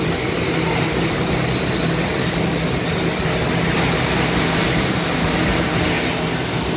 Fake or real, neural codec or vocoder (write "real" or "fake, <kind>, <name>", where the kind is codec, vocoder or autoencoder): real